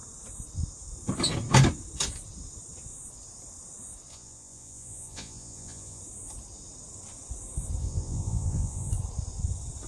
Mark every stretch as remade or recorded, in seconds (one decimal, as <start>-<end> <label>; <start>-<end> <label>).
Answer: 0.0-4.1 recorded; 4.1-6.0 remade; 6.0-7.8 recorded; 7.8-8.9 remade; 8.9-9.9 recorded